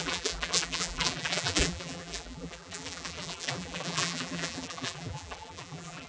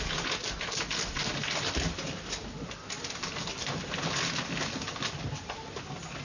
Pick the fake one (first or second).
first